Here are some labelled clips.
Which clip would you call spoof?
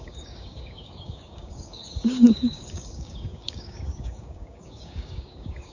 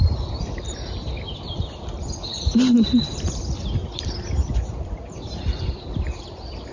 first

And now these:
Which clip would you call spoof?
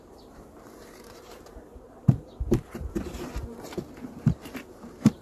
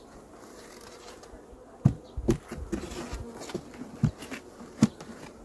first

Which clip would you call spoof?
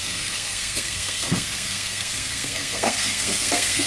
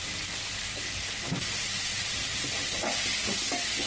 first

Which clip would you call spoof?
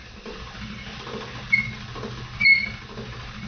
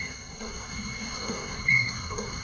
second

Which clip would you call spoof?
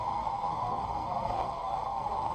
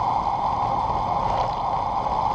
first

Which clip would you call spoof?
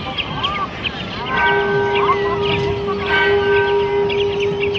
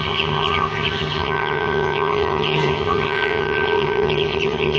second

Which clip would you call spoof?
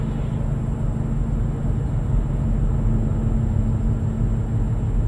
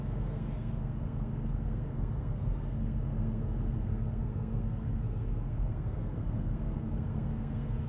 second